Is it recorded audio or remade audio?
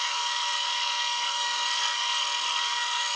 remade